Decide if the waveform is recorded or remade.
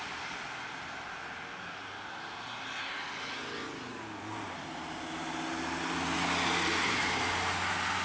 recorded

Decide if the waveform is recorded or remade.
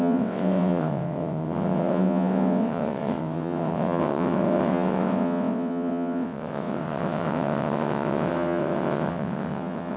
remade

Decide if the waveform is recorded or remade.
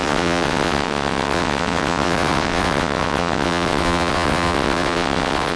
remade